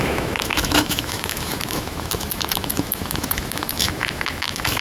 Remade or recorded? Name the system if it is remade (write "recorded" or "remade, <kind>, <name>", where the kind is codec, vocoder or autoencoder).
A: remade, autoencoder, DAC-VAE